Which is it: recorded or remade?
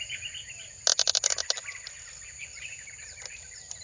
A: recorded